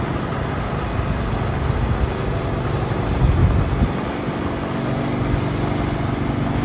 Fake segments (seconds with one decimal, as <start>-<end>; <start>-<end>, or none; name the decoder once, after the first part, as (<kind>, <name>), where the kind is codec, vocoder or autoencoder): none